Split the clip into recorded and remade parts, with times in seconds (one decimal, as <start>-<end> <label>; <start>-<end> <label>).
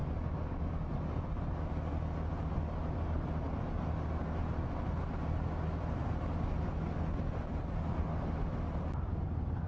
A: 0.0-9.7 recorded